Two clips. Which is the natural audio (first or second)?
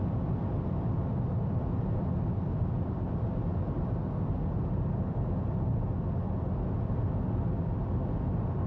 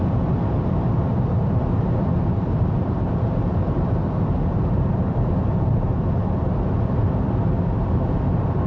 first